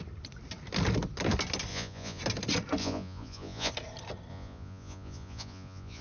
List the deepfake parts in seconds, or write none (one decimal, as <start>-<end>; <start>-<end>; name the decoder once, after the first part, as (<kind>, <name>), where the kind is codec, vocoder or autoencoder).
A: 1.7-2.2 (vocoder, Vocos); 2.8-3.7; 4.3-6.0

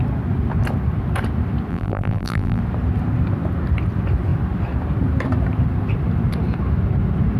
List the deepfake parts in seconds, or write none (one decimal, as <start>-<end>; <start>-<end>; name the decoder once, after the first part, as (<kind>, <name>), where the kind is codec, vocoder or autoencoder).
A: 1.7-2.6 (vocoder, BigVGAN v2)

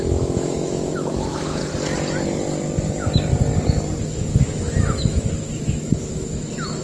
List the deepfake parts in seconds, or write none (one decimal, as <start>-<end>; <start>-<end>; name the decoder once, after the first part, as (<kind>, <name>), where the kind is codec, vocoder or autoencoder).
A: 0.0-1.6 (autoencoder, DAC-VAE); 4.0-6.8